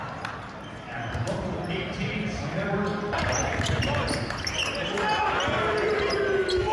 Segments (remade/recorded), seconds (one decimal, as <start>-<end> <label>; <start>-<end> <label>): 0.0-2.9 remade; 2.9-5.3 recorded; 5.3-6.7 remade